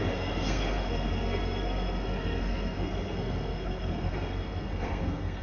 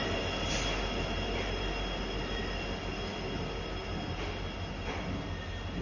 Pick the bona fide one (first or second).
second